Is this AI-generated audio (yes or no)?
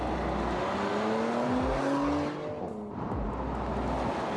no